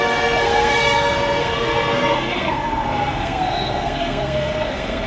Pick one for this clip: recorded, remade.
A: remade